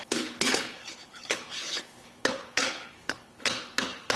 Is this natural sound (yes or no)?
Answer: no